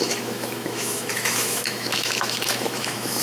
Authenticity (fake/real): fake